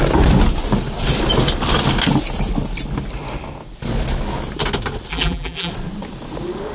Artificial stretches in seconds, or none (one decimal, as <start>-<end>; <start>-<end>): 5.1-5.7